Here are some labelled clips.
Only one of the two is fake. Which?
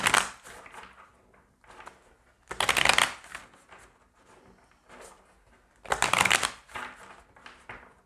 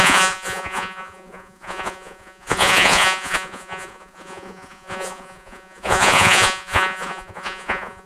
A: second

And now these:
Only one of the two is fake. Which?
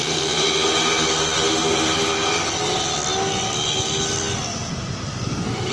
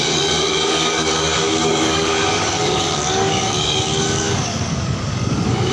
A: second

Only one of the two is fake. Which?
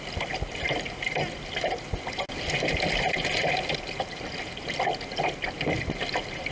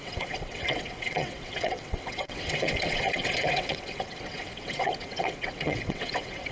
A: second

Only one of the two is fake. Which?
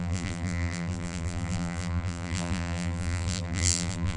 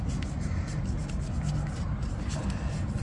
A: first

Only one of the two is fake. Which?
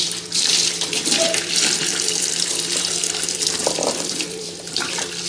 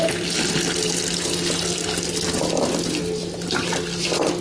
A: first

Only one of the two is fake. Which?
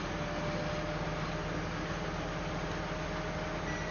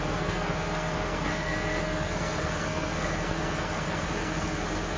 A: second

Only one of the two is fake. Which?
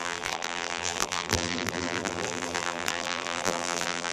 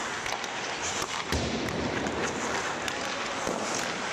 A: first